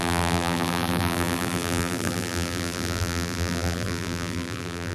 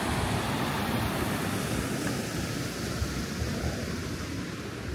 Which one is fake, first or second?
first